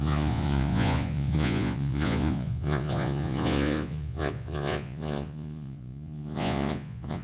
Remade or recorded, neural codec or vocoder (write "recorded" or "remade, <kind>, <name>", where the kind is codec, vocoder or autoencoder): remade, vocoder, Vocos